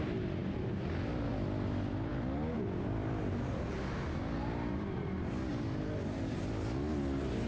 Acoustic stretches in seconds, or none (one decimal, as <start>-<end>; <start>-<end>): 0.0-7.5

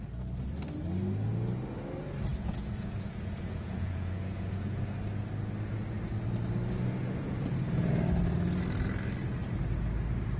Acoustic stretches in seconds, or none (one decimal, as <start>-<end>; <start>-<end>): 0.0-2.3; 4.8-7.0; 7.9-10.4

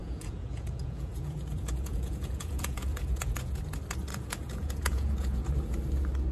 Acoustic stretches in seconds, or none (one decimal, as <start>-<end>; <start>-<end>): 3.6-4.1; 5.5-6.3

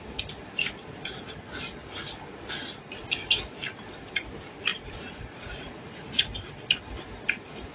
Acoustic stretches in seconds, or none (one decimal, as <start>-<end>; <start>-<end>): 0.0-4.7; 6.2-7.7

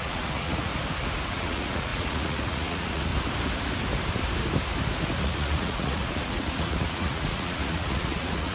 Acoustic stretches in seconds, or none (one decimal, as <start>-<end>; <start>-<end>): 0.7-1.3; 3.1-5.2

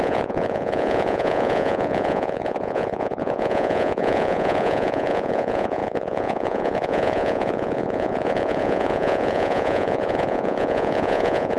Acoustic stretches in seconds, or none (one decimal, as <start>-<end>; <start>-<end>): none

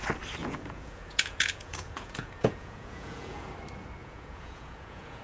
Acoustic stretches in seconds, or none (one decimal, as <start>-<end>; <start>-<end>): 0.0-0.4; 3.5-4.0

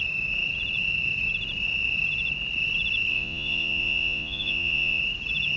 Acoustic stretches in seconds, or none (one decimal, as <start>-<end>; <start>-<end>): 0.0-3.1; 5.0-5.6